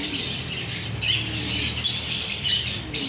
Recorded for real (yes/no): yes